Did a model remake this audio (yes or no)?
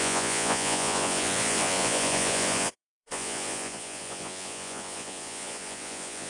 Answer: yes